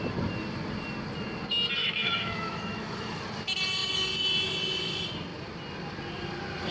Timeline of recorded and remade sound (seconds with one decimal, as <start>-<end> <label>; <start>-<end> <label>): 0.0-1.8 recorded; 1.8-3.2 remade; 3.2-6.7 recorded